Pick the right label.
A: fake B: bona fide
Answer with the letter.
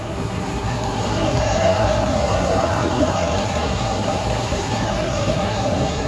A